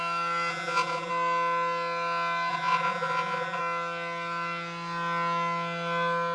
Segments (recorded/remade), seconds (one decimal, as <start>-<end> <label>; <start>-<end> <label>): 0.0-0.5 recorded; 0.5-1.1 remade; 1.1-2.5 recorded; 2.5-3.6 remade; 3.6-6.3 recorded